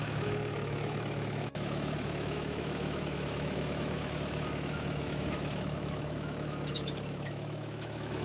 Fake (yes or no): yes